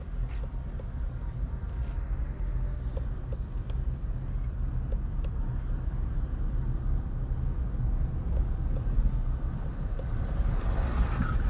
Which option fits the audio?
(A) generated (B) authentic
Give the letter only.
B